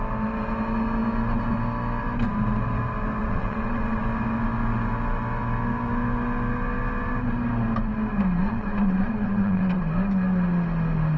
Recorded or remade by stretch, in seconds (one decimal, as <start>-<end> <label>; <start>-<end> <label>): 0.0-3.2 recorded; 3.2-4.0 remade; 4.0-8.4 recorded; 8.4-9.8 remade; 9.8-11.2 recorded